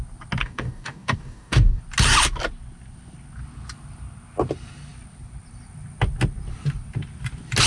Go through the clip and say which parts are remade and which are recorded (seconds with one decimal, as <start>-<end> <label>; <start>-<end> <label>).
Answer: 0.0-0.4 recorded; 0.4-1.8 remade; 1.8-7.7 recorded